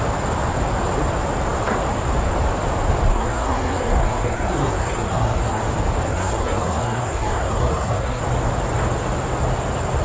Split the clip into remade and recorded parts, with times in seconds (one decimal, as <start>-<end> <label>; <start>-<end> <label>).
0.0-3.1 recorded; 3.1-5.6 remade; 5.6-6.1 recorded; 6.1-8.2 remade; 8.2-10.0 recorded